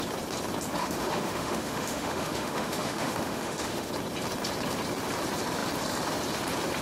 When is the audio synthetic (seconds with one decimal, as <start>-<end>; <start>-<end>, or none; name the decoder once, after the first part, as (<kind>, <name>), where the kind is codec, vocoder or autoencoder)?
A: 0.8-3.9 (autoencoder, DAC-VAE)